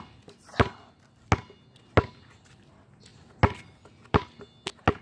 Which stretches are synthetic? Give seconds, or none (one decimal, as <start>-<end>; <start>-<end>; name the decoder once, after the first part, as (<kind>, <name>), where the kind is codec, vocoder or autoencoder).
none

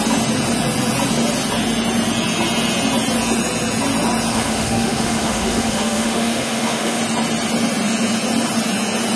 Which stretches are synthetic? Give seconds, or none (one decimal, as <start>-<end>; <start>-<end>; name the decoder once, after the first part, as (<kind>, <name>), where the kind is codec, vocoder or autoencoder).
4.3-7.0 (autoencoder, DAC-VAE)

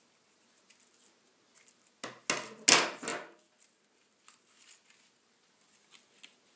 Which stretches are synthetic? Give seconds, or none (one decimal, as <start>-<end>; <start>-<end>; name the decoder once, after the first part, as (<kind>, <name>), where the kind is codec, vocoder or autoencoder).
none